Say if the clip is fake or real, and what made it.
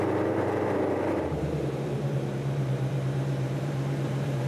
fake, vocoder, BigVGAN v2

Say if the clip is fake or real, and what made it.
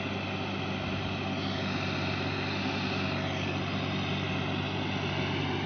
real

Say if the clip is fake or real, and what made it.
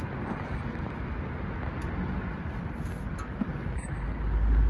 real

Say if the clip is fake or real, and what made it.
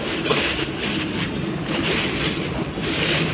fake, vocoder, BigVGAN v2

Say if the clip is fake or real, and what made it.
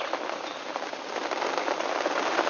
real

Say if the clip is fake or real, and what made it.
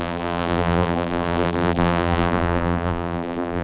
fake, vocoder, BigVGAN v2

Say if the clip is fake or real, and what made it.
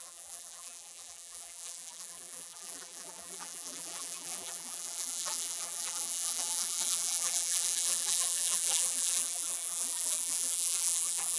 fake, vocoder, BigVGAN v2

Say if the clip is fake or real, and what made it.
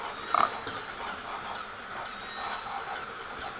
real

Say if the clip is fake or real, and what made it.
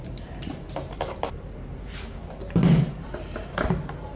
fake, vocoder, BigVGAN v2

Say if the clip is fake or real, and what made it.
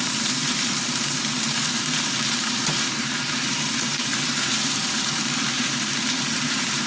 fake, vocoder, BigVGAN v2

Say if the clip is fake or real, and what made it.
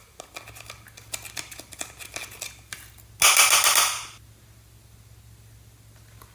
real